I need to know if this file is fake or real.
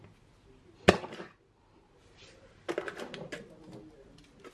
real